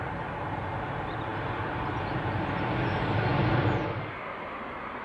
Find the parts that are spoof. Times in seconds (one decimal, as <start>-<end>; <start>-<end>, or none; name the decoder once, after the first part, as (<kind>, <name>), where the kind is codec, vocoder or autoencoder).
none